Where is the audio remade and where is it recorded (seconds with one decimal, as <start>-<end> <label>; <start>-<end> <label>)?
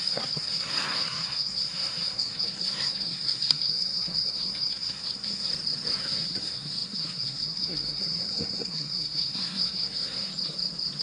0.0-5.5 remade; 5.5-6.0 recorded; 6.0-10.3 remade; 10.3-11.0 recorded